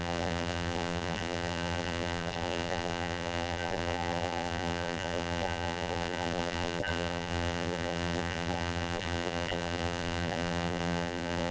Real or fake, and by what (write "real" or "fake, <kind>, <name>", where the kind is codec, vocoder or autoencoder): fake, vocoder, BigVGAN v2